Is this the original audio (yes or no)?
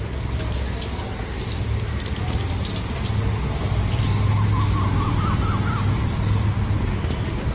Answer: yes